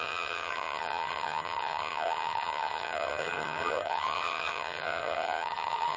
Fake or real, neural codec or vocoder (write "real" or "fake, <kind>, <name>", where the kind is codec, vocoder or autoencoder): fake, vocoder, HiFi-GAN